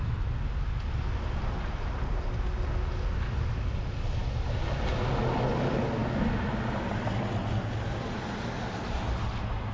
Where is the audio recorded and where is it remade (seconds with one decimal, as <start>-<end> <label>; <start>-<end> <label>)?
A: 0.0-9.7 recorded